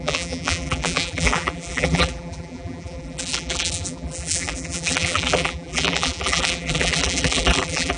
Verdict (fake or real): fake